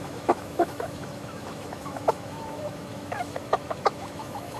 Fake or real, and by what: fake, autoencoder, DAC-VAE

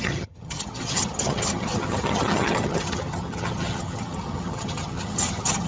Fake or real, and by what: fake, vocoder, HiFi-GAN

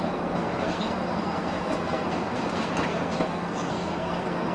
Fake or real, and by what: fake, codec, SNAC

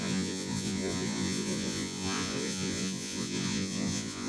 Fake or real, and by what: fake, vocoder, Vocos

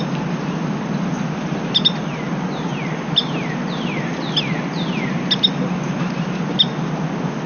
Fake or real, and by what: real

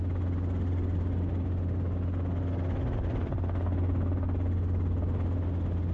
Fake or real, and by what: real